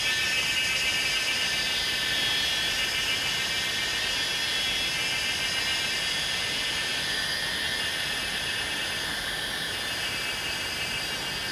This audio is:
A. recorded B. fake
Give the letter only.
A